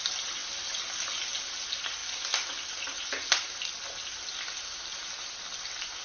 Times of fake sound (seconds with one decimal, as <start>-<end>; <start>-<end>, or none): none